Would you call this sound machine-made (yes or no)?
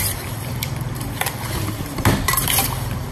yes